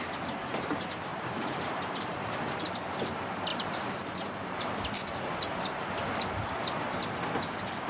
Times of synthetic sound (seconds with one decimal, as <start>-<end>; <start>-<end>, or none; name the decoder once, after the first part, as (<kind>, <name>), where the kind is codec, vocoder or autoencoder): 1.1-2.3 (vocoder, BigVGAN v2); 3.5-4.6